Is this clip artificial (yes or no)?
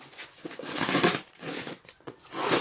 yes